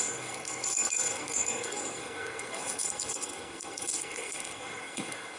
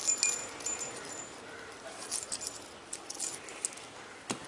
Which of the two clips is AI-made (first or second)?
first